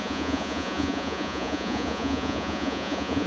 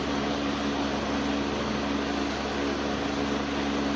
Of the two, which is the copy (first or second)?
first